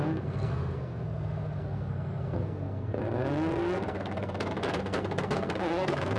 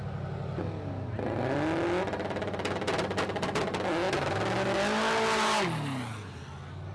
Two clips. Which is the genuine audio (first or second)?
second